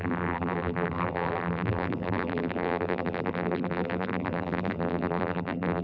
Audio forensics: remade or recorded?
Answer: remade